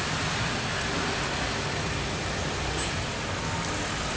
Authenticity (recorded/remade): recorded